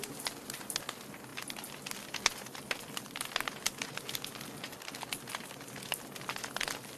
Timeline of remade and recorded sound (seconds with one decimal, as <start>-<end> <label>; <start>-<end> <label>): 0.0-7.0 recorded